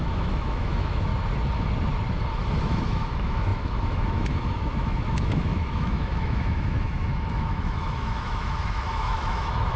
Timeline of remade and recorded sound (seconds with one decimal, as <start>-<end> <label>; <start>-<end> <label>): 0.0-1.1 remade; 1.1-2.6 recorded; 2.6-9.8 remade